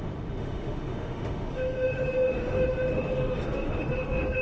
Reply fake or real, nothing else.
fake